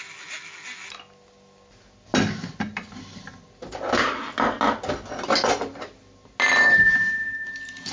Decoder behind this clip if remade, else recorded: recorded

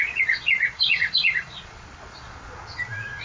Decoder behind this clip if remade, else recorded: remade, vocoder, Vocos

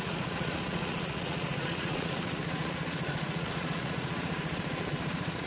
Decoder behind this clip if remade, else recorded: remade, vocoder, Vocos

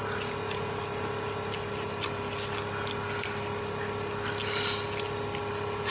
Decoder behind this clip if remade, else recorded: recorded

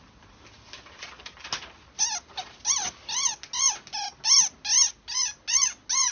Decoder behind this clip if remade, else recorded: recorded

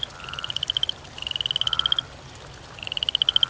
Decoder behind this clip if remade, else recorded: recorded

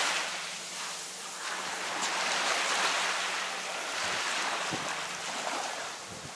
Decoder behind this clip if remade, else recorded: recorded